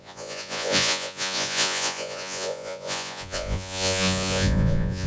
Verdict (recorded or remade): remade